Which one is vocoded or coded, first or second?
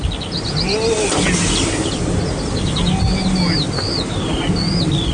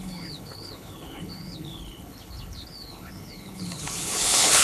second